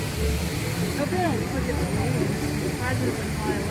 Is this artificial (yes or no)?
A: yes